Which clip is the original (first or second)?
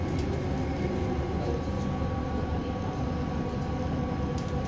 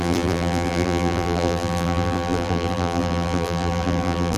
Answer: first